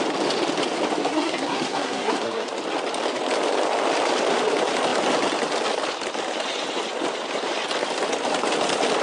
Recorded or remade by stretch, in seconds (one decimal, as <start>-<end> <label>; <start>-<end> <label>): 0.0-1.0 recorded; 1.0-2.5 remade; 2.5-9.0 recorded